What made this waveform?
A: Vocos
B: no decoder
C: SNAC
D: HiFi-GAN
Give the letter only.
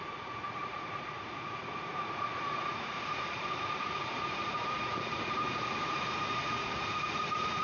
A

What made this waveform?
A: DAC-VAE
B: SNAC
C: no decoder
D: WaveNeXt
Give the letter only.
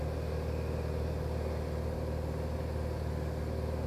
C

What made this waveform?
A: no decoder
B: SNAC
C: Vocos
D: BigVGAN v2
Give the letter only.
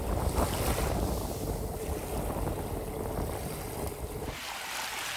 A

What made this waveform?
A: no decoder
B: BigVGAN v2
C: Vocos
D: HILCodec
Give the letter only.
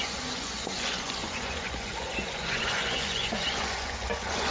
C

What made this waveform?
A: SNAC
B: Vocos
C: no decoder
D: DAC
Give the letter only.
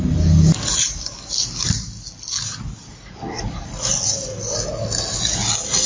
C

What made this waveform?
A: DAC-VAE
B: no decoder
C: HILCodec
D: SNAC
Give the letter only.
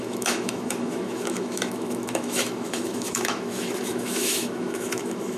A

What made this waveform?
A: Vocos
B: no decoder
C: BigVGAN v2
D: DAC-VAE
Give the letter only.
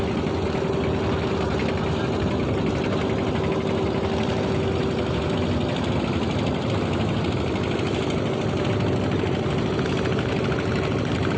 B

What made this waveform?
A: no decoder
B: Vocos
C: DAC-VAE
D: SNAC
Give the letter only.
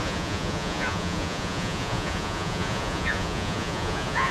B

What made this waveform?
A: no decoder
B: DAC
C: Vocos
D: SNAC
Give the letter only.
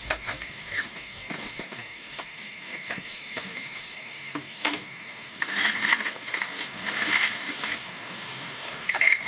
B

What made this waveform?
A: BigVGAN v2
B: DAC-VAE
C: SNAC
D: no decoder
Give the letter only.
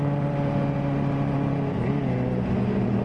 D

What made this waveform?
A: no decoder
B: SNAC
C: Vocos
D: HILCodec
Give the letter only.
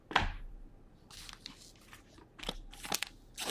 A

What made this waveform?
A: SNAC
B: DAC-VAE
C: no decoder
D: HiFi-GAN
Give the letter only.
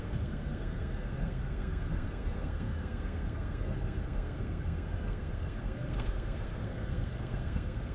A